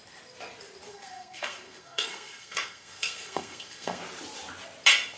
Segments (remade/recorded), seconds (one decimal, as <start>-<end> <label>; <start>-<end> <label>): 0.0-0.9 recorded; 0.9-4.0 remade; 4.0-5.2 recorded